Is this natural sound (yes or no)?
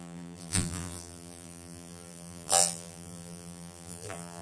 no